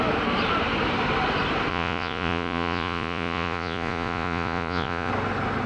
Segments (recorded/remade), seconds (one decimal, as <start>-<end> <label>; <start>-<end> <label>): 0.0-1.7 recorded; 1.7-5.1 remade; 5.1-5.7 recorded